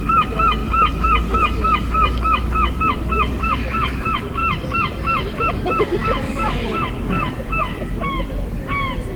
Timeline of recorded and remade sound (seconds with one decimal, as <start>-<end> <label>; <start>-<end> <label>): 0.0-4.4 remade; 4.4-5.5 recorded; 5.5-7.7 remade; 7.7-9.2 recorded